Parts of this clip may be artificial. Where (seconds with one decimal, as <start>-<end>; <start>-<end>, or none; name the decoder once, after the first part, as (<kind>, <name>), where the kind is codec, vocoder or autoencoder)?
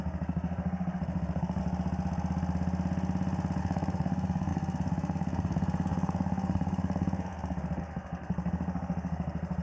0.0-1.6 (codec, SNAC); 3.6-9.6